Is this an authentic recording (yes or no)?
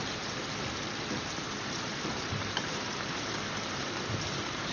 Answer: no